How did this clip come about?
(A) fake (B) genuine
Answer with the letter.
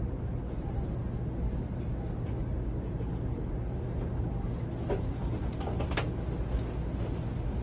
B